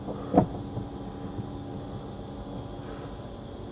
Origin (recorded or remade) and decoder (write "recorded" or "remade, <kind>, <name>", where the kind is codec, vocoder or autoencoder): recorded